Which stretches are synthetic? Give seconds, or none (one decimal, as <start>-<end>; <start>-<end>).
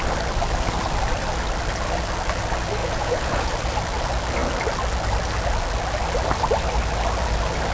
2.8-3.5